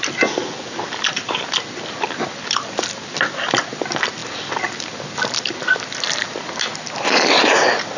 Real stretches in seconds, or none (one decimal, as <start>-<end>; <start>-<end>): 0.0-8.0